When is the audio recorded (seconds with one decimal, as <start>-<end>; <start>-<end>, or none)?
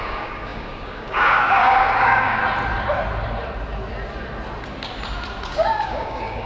2.4-5.5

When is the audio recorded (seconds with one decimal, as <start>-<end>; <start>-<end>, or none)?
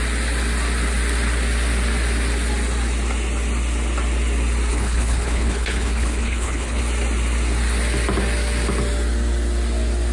0.0-4.7; 6.8-10.1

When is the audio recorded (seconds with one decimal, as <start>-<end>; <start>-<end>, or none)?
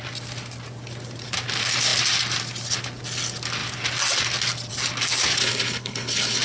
0.0-5.4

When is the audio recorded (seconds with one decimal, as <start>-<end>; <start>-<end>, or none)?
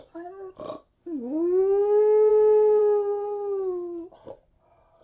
0.0-2.3; 2.8-5.0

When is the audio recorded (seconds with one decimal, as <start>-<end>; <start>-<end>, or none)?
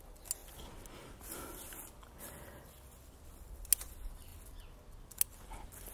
0.0-5.9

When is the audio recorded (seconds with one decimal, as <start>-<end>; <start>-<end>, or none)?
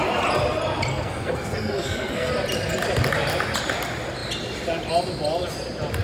0.0-0.9; 2.3-6.0